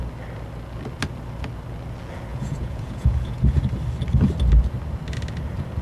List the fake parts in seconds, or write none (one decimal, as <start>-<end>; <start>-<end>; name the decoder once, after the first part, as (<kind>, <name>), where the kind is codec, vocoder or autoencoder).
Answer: 2.3-3.6 (vocoder, Vocos)